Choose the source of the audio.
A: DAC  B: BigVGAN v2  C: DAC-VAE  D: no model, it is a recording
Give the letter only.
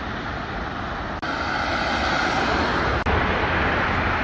D